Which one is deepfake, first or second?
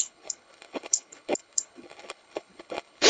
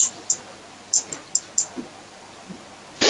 first